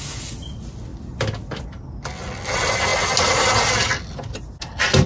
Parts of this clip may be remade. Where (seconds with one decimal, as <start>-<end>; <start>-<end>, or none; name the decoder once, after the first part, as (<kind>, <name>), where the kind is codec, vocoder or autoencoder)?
none